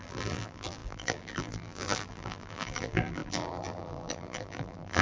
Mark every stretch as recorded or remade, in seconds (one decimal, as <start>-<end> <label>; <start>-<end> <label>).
0.0-5.0 remade